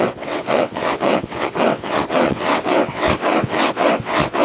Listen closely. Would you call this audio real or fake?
fake